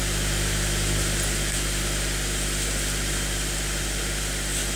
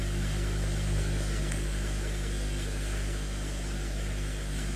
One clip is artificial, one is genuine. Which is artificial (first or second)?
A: second